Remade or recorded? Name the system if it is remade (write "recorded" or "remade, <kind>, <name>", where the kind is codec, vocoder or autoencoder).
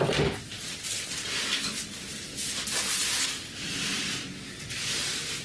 recorded